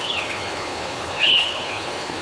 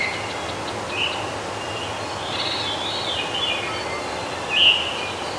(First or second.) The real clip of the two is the second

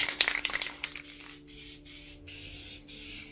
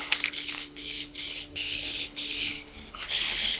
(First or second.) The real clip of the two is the first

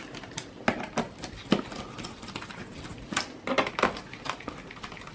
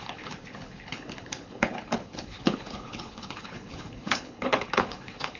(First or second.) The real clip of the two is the first